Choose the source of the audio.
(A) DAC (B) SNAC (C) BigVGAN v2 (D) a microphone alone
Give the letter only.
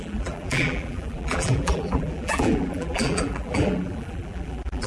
C